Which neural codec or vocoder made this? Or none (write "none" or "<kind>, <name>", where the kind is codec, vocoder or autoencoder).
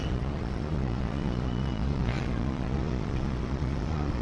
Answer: vocoder, Vocos